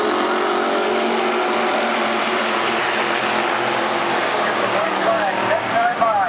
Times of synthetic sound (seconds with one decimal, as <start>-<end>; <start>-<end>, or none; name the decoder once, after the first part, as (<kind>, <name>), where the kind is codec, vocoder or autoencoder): 3.8-6.3 (codec, DAC)